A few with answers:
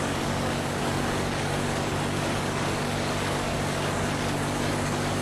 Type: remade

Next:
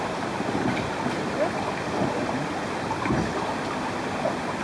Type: recorded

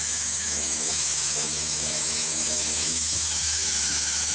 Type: remade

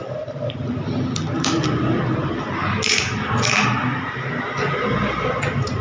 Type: recorded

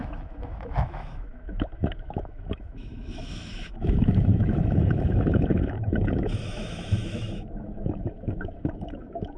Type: remade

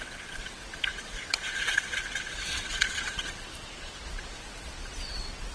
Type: remade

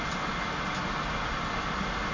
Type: recorded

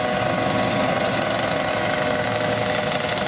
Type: recorded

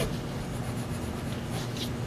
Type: recorded